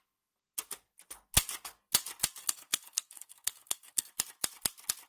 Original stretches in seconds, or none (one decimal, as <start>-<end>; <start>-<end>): 0.0-2.4; 4.1-5.1